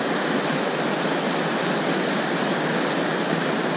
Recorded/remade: recorded